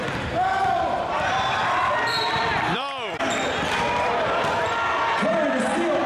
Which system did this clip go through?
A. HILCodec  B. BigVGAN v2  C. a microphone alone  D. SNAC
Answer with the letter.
B